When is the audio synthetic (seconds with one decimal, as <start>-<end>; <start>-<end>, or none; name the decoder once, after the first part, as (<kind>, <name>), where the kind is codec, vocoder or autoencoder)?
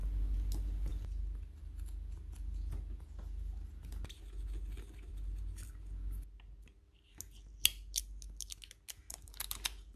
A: none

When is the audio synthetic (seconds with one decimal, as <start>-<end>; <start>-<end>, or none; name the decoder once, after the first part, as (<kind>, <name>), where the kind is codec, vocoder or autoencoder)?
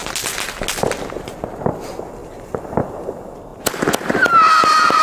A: none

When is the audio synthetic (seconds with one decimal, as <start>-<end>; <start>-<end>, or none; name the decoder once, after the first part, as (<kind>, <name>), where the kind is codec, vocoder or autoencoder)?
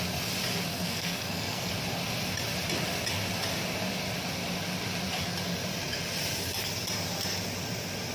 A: 0.7-1.7 (codec, SNAC)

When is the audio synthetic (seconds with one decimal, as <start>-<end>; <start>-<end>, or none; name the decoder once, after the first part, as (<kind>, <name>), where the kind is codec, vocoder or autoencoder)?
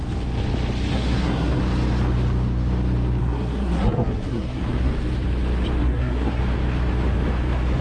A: 0.9-1.6 (codec, SNAC); 3.2-4.9; 5.8-6.4